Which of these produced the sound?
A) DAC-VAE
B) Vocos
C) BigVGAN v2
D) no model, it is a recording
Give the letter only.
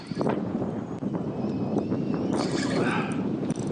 C